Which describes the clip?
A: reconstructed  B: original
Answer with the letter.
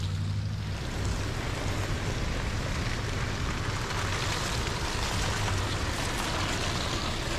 B